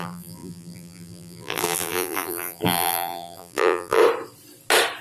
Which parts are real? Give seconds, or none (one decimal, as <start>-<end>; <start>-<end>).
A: 4.0-5.0